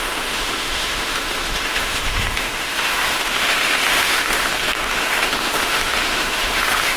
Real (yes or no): no